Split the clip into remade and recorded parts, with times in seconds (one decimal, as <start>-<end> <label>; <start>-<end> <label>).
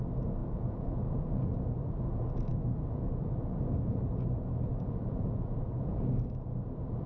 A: 0.0-0.4 recorded; 0.4-1.7 remade; 1.7-2.5 recorded; 2.5-4.2 remade; 4.2-4.7 recorded; 4.7-6.0 remade; 6.0-7.1 recorded